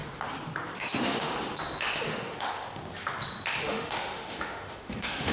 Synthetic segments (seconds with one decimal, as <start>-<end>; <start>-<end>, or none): 0.8-1.3; 2.1-2.5; 3.6-5.3